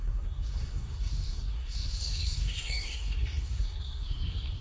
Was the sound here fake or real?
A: fake